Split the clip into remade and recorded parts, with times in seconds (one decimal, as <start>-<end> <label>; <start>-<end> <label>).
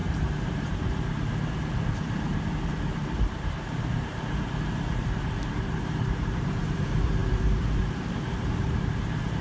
0.0-9.4 remade